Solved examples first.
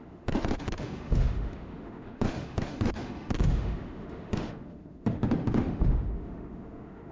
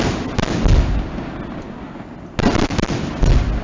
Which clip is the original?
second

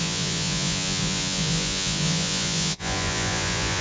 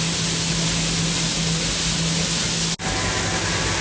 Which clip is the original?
second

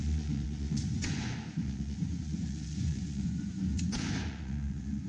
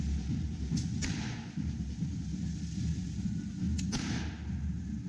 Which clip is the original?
second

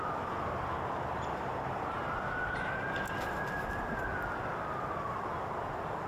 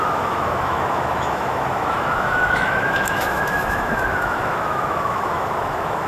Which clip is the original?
first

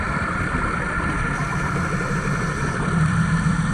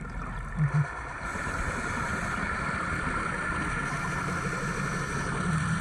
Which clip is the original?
second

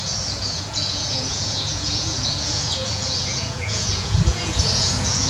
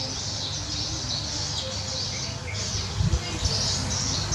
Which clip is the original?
second